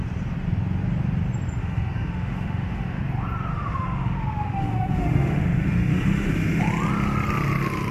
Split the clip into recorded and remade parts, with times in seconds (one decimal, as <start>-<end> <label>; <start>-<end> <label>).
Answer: 0.0-1.6 recorded; 1.6-3.0 remade; 3.0-3.5 recorded; 3.5-6.6 remade; 6.6-7.9 recorded